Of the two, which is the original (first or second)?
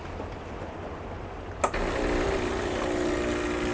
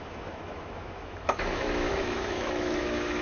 first